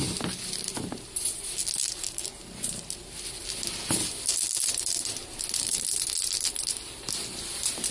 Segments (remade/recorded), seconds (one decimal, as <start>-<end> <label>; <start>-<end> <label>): 0.0-7.9 recorded